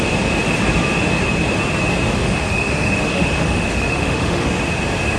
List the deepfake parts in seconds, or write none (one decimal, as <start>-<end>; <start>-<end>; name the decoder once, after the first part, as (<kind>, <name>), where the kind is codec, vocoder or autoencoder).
2.2-4.6 (autoencoder, DAC-VAE)